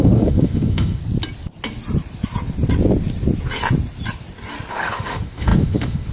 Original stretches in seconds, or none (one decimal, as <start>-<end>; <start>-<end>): 1.0-4.7